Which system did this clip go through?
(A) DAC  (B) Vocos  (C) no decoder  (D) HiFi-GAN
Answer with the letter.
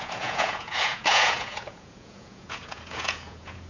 B